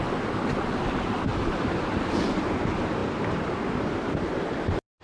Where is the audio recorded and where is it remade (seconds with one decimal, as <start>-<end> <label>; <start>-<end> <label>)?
0.0-1.3 recorded; 1.3-1.9 remade; 1.9-5.0 recorded